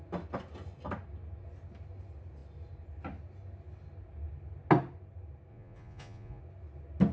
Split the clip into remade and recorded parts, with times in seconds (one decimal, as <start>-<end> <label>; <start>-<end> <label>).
0.0-5.5 recorded; 5.5-6.4 remade; 6.4-7.1 recorded